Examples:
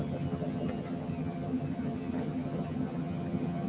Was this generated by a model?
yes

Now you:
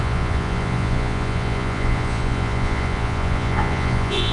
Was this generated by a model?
yes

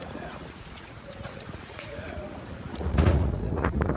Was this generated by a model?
yes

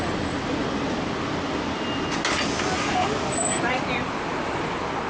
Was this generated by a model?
no